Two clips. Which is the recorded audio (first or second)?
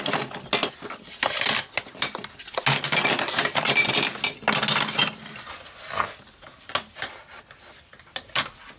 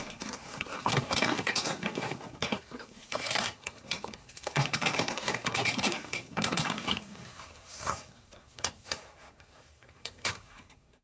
first